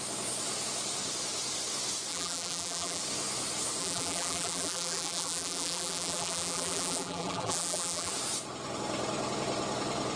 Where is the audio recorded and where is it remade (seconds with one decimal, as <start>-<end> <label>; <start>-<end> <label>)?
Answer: 0.0-2.1 recorded; 2.1-3.0 remade; 3.0-3.8 recorded; 3.8-8.1 remade; 8.1-10.2 recorded